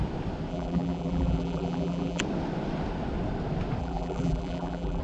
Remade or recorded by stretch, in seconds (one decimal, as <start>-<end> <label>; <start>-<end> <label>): 0.0-0.5 recorded; 0.5-2.2 remade; 2.2-3.8 recorded; 3.8-5.0 remade